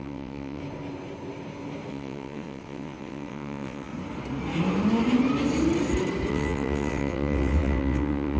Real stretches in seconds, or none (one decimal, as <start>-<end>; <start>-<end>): 0.6-1.9; 3.9-6.3